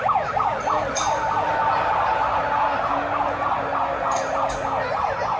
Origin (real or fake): real